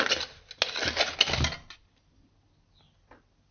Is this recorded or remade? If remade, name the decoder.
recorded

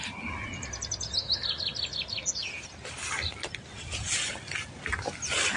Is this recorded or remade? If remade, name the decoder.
recorded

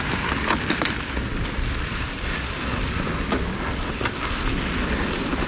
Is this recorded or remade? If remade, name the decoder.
recorded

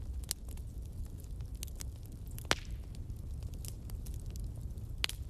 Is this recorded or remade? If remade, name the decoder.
recorded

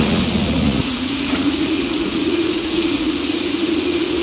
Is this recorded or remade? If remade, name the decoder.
remade, vocoder, Vocos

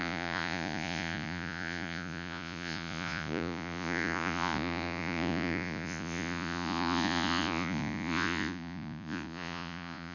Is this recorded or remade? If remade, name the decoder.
remade, vocoder, Vocos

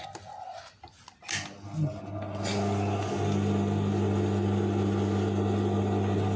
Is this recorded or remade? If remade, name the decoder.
recorded